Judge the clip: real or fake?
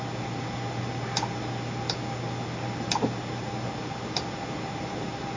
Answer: real